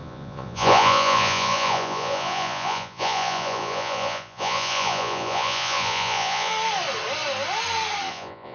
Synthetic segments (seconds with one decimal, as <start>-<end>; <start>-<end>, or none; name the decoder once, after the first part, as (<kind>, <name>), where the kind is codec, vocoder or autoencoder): 0.0-6.5 (vocoder, Vocos); 8.1-8.5